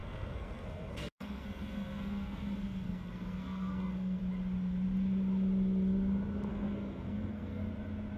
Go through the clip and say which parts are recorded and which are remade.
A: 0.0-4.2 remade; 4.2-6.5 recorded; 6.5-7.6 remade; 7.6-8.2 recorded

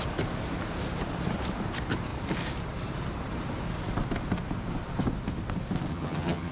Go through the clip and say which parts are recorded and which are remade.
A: 0.0-5.9 recorded; 5.9-6.5 remade

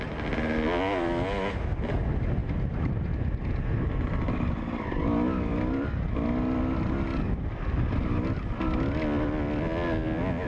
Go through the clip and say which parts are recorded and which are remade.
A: 0.0-10.5 recorded

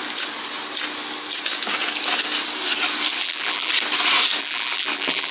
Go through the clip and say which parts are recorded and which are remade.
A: 0.0-3.2 recorded; 3.2-3.7 remade; 3.7-4.4 recorded; 4.4-5.3 remade

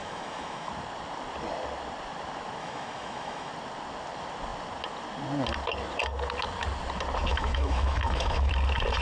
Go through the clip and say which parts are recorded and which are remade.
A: 0.0-0.7 remade; 0.7-2.6 recorded; 2.6-3.5 remade; 3.5-7.3 recorded; 7.3-8.5 remade; 8.5-9.0 recorded

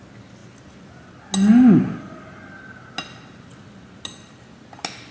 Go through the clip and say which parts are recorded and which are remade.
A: 0.0-5.1 recorded